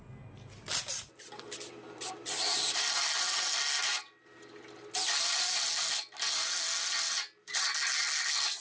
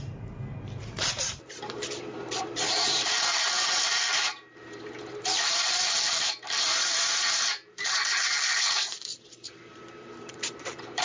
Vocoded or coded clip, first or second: second